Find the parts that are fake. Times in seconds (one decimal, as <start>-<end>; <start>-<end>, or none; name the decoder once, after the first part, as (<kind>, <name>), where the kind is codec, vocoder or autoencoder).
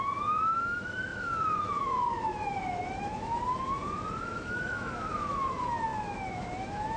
0.0-3.3 (autoencoder, DAC-VAE); 4.2-7.0